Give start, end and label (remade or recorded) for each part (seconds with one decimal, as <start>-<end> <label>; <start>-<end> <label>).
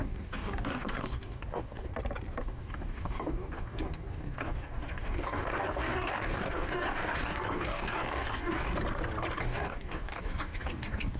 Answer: 0.0-1.9 remade; 1.9-2.4 recorded; 2.4-8.7 remade; 8.7-9.4 recorded; 9.4-11.2 remade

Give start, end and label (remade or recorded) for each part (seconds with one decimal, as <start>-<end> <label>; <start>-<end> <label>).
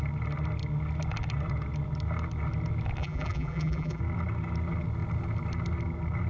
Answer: 0.0-3.0 recorded; 3.0-4.0 remade; 4.0-6.3 recorded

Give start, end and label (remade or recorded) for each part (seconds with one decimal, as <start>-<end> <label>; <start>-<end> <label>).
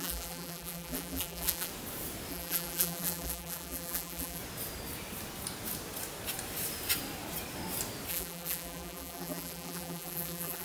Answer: 0.0-1.7 remade; 1.7-2.3 recorded; 2.3-4.4 remade; 4.4-8.1 recorded; 8.1-10.6 remade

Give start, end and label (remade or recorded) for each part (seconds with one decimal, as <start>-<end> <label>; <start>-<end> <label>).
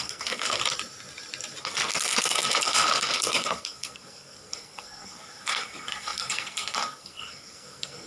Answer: 0.0-0.6 remade; 0.6-1.6 recorded; 1.6-8.1 remade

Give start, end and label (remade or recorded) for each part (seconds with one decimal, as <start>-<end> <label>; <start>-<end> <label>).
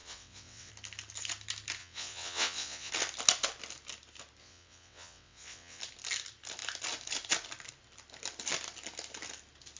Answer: 0.0-0.7 remade; 0.7-1.8 recorded; 1.8-2.9 remade; 2.9-4.4 recorded; 4.4-5.8 remade; 5.8-9.8 recorded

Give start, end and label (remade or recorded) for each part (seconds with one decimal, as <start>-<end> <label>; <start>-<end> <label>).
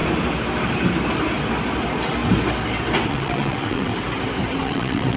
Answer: 0.0-3.1 recorded; 3.1-3.9 remade; 3.9-4.6 recorded; 4.6-5.2 remade